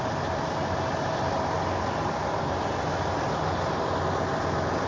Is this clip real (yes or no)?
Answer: yes